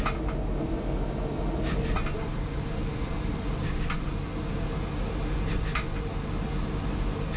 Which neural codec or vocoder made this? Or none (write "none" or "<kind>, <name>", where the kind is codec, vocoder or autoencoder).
none